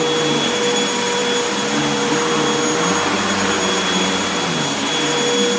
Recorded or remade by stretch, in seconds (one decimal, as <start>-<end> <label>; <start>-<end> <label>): 0.0-5.6 recorded